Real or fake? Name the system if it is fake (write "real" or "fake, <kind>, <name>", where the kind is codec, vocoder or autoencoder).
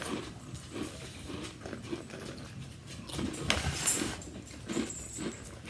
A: real